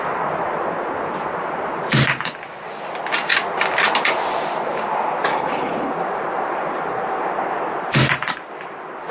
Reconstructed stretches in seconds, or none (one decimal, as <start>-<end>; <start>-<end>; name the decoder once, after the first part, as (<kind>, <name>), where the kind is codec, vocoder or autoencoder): 5.3-5.9 (codec, HILCodec)